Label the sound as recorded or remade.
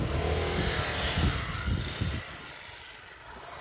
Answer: recorded